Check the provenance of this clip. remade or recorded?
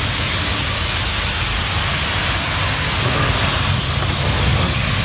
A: recorded